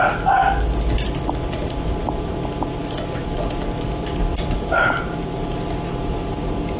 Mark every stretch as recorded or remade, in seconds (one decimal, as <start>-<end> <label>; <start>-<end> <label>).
0.0-6.8 recorded